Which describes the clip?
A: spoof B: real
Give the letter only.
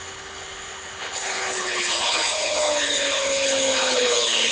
A